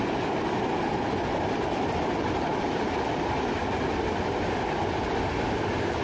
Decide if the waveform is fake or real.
real